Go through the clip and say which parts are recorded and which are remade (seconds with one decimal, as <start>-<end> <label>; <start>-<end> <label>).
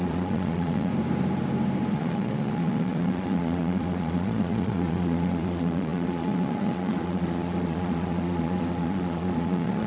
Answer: 0.0-0.9 remade; 0.9-1.9 recorded; 1.9-9.9 remade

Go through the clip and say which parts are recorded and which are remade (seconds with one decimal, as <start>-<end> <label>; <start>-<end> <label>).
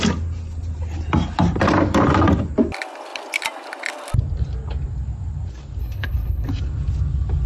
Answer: 0.0-5.8 recorded; 5.8-6.5 remade; 6.5-7.5 recorded